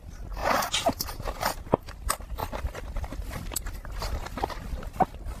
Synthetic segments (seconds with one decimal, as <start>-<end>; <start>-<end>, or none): 0.4-1.9